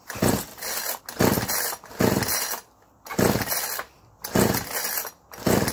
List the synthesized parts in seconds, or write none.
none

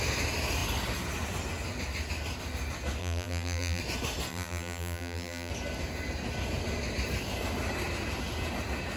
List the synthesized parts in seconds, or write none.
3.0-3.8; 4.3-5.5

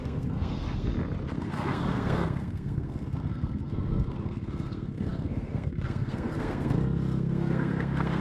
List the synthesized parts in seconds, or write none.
0.0-0.9; 1.4-8.2

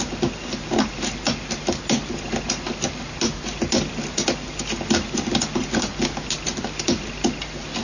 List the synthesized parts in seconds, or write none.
none

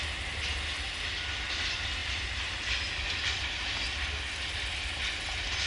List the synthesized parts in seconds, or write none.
none

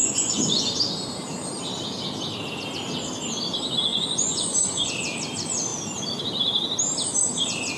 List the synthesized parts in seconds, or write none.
0.0-0.8; 3.9-4.9

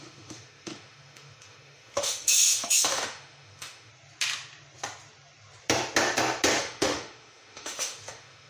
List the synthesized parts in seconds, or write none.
0.0-3.9; 6.6-8.5

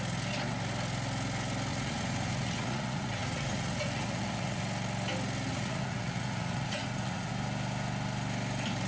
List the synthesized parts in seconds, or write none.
1.7-4.6; 5.5-7.3